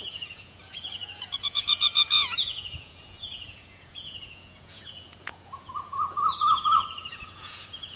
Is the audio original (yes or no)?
no